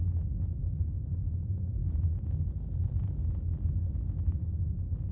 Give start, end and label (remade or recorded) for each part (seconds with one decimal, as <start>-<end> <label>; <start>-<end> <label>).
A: 0.0-5.1 recorded